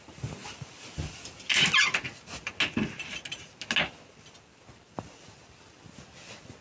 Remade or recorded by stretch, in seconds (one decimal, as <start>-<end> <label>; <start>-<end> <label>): 0.0-6.6 recorded